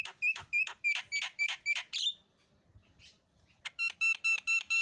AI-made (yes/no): no